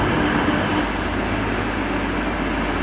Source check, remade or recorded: recorded